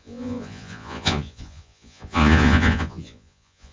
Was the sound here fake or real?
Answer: fake